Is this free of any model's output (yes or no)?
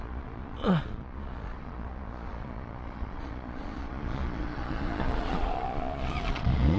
no